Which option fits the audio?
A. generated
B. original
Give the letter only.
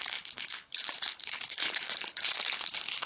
A